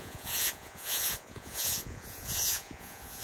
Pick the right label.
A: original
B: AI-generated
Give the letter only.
B